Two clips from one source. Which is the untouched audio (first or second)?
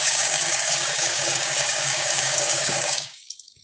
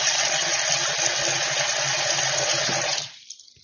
second